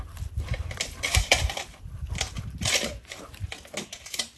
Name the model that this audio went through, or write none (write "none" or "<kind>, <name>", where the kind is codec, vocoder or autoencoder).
vocoder, BigVGAN v2